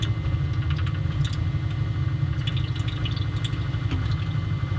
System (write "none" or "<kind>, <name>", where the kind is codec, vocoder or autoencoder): none